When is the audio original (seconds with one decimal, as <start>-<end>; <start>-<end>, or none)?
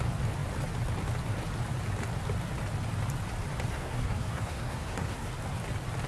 0.0-3.7; 5.3-6.1